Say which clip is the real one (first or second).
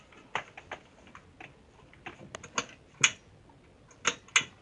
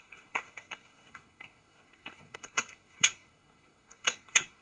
first